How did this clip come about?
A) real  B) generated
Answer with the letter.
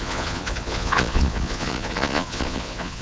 B